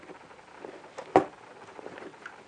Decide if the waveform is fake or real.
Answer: real